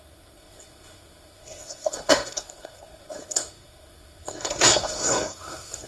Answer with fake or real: fake